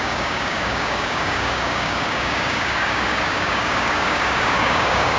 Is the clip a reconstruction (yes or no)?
yes